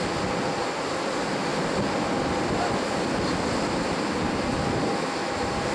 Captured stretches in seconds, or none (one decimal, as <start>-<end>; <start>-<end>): 0.0-5.7